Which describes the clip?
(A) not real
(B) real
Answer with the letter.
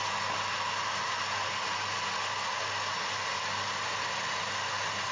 B